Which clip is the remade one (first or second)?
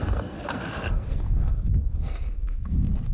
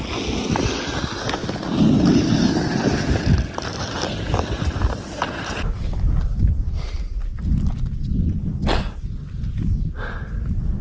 first